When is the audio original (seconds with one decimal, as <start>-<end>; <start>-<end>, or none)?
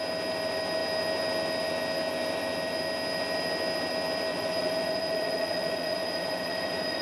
0.0-4.3